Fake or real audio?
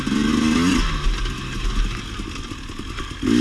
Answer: real